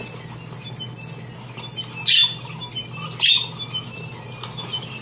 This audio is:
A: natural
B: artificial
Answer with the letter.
A